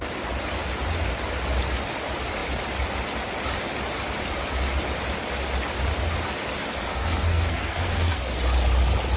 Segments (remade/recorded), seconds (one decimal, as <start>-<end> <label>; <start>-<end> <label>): 0.0-6.9 recorded; 6.9-8.4 remade; 8.4-9.2 recorded